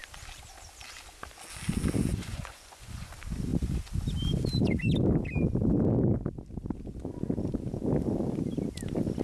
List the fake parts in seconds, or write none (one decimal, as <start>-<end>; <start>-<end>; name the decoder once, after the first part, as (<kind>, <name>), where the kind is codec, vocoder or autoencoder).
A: 2.1-3.1 (vocoder, Vocos)

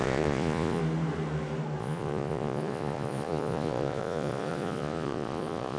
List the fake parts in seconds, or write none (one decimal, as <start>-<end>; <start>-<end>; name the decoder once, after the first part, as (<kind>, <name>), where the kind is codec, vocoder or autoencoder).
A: 0.0-0.8 (vocoder, Vocos); 1.8-5.8

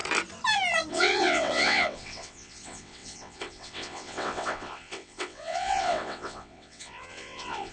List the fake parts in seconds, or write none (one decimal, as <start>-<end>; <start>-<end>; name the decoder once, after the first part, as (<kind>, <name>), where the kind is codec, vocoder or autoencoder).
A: 0.9-7.7 (vocoder, WaveNeXt)